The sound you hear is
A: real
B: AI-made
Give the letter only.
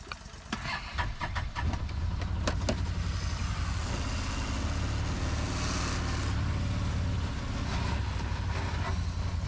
A